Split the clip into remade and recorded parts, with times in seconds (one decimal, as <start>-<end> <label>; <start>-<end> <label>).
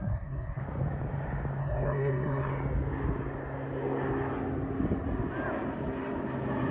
0.0-0.6 remade; 0.6-1.6 recorded; 1.6-2.5 remade; 2.5-6.7 recorded